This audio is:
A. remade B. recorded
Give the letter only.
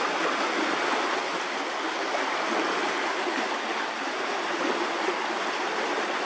B